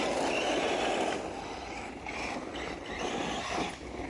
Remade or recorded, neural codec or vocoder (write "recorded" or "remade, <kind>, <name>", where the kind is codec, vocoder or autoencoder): recorded